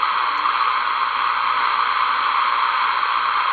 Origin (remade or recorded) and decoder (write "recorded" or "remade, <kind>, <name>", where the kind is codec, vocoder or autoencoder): recorded